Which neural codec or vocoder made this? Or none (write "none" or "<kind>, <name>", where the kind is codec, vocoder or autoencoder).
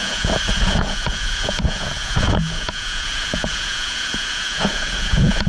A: vocoder, Vocos